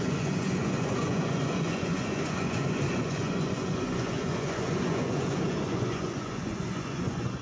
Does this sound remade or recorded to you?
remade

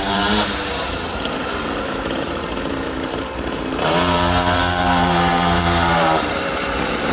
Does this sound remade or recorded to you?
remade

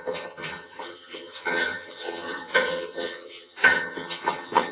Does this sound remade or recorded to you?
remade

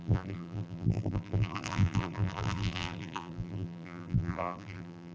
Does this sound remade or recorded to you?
remade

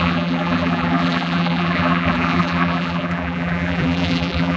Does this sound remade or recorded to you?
remade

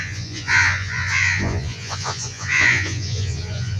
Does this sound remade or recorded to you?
remade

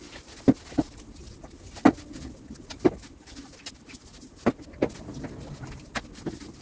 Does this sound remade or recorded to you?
recorded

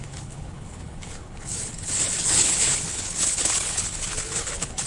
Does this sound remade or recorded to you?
remade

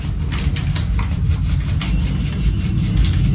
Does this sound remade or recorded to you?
recorded